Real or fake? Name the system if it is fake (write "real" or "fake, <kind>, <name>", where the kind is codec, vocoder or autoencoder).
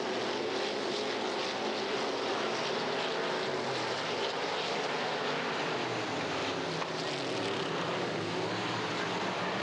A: real